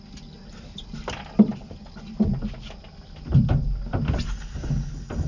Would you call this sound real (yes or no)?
yes